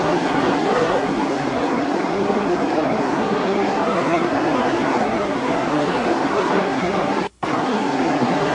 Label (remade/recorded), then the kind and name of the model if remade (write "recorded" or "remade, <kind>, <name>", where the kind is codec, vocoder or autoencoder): remade, codec, SNAC